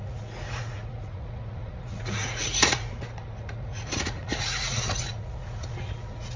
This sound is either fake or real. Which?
fake